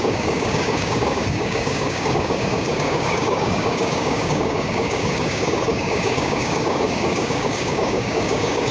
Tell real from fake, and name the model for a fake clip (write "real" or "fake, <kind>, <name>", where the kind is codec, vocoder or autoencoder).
fake, codec, DAC